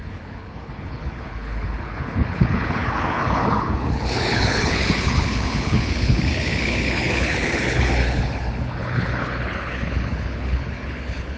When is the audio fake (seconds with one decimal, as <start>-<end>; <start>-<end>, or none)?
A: 0.0-11.4